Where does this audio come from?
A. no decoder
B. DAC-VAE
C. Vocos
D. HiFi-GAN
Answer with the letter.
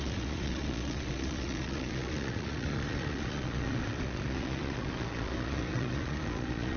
C